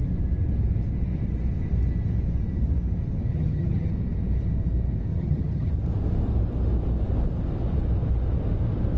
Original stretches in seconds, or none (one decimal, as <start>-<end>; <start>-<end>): 0.0-3.3; 3.9-5.1; 5.7-9.0